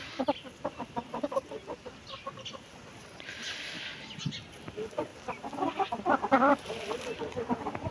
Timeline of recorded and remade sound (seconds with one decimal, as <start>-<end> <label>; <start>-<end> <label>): 0.0-7.9 recorded